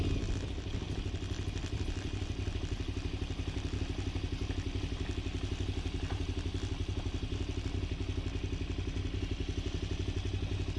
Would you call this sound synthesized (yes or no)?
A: no